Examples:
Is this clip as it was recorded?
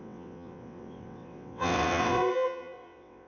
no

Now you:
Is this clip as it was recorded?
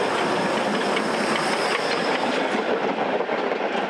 yes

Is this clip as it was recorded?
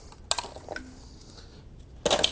yes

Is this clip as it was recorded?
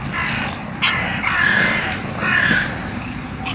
yes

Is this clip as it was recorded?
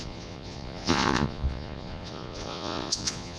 no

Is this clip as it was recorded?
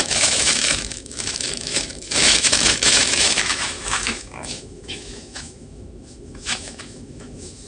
no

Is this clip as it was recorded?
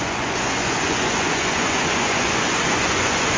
no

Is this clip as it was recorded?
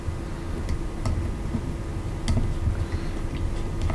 yes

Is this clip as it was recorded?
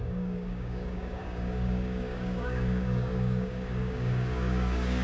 no